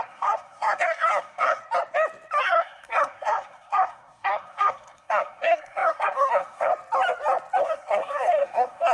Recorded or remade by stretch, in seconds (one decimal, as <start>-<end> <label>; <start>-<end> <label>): 0.0-1.6 remade; 1.6-2.4 recorded; 2.4-6.7 remade; 6.7-7.6 recorded; 7.6-8.9 remade